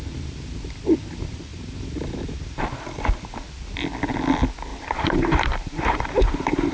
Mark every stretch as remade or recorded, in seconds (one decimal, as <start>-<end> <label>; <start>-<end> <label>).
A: 0.0-1.5 recorded; 1.5-2.6 remade; 2.6-4.7 recorded; 4.7-6.7 remade